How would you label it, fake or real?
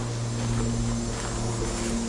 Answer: real